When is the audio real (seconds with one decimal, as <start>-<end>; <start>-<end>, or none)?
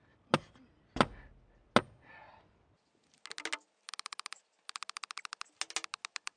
0.0-6.4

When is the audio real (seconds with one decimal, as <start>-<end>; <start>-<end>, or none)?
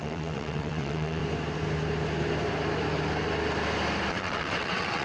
1.2-4.1